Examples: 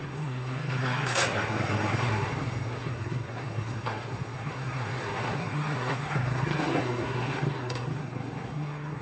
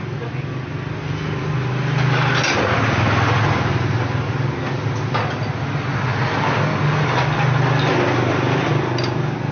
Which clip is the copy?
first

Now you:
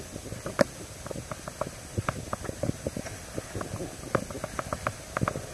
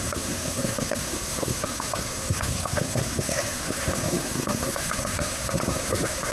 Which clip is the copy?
second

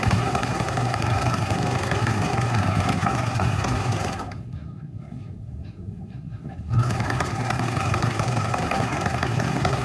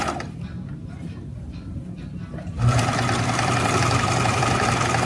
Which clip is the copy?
first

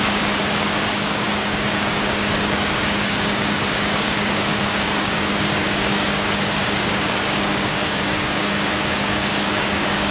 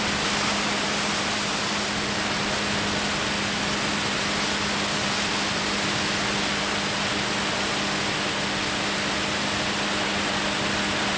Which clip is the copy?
first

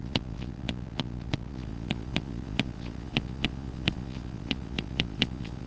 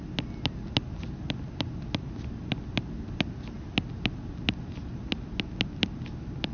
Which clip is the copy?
first